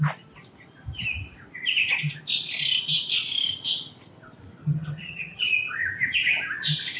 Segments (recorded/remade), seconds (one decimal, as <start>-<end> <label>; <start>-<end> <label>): 0.0-4.6 recorded; 4.6-5.4 remade; 5.4-7.0 recorded